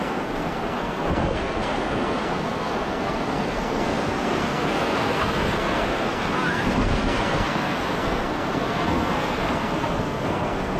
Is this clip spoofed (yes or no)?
yes